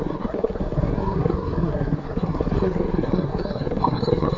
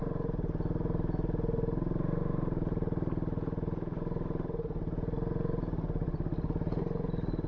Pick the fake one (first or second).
first